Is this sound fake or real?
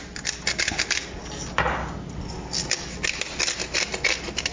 real